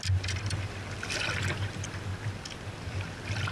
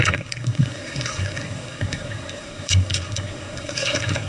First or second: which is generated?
second